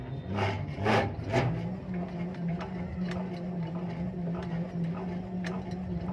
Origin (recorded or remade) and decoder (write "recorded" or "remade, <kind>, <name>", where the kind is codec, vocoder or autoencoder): recorded